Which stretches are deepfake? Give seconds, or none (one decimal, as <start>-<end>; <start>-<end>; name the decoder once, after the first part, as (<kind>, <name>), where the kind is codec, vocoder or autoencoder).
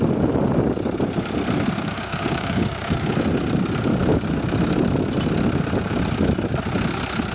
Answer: 1.8-3.2 (codec, DAC)